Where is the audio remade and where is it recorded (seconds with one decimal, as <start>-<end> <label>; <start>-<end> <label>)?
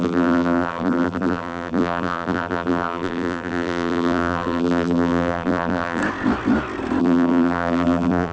0.0-6.0 remade; 6.0-7.0 recorded; 7.0-8.3 remade